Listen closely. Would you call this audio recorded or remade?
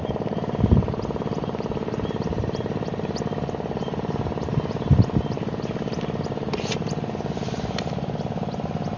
recorded